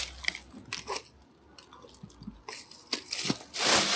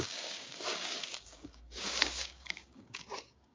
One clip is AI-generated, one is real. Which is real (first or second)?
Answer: first